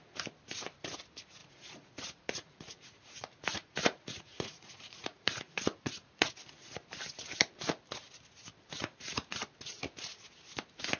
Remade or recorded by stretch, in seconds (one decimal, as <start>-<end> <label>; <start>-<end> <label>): 0.0-1.4 recorded; 1.4-6.3 remade; 6.3-8.8 recorded; 8.8-9.4 remade; 9.4-11.0 recorded